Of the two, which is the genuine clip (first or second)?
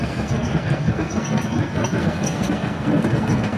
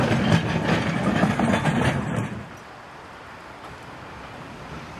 second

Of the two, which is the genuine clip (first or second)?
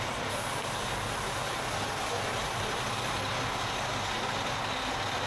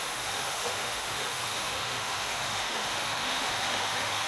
first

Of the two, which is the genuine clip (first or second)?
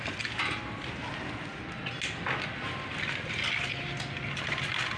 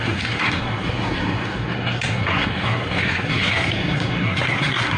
first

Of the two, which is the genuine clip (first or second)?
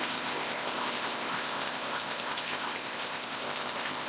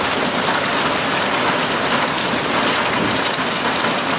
second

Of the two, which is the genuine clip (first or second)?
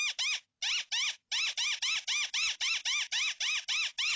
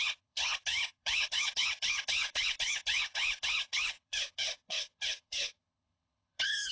first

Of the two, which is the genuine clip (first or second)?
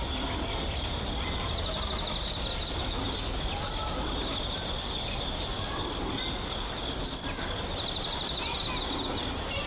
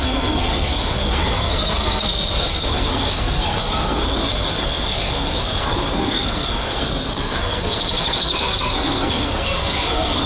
first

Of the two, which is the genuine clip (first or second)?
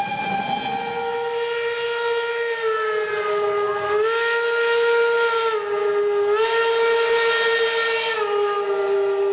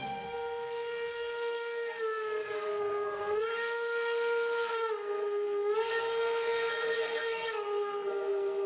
first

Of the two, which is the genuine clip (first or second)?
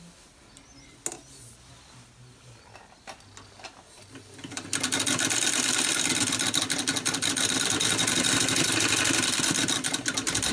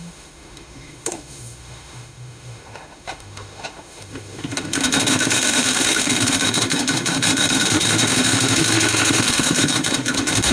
first